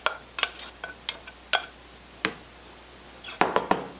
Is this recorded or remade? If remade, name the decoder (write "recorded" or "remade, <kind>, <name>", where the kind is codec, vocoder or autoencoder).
recorded